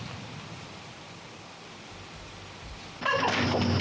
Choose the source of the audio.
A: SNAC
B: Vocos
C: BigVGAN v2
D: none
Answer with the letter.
D